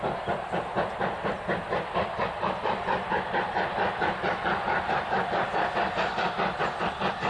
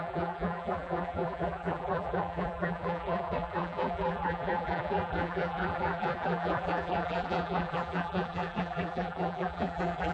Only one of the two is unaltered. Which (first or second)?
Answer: first